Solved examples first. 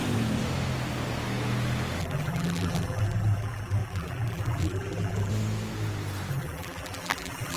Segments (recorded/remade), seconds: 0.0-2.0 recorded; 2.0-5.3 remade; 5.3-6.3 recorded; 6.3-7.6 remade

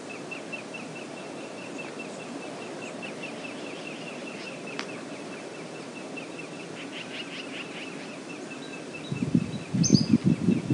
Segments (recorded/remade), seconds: 0.0-10.7 recorded

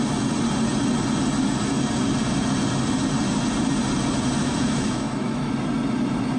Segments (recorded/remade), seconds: 0.0-4.4 recorded; 4.4-5.5 remade; 5.5-6.4 recorded

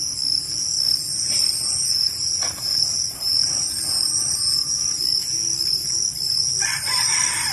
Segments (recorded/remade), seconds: 0.0-1.1 recorded; 1.1-5.0 remade; 5.0-6.7 recorded; 6.7-7.5 remade